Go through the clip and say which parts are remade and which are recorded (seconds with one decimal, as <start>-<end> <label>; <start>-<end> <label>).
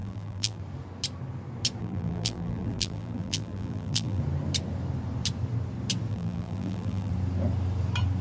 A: 0.0-0.6 remade; 0.6-1.8 recorded; 1.8-4.2 remade; 4.2-6.1 recorded; 6.1-7.1 remade; 7.1-8.2 recorded